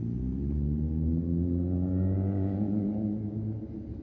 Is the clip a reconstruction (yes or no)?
no